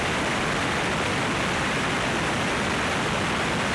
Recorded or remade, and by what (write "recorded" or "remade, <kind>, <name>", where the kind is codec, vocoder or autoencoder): recorded